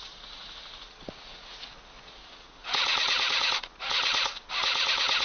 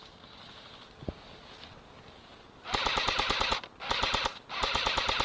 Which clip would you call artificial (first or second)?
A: first